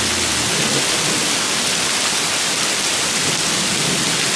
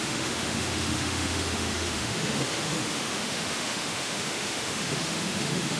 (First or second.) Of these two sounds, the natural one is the first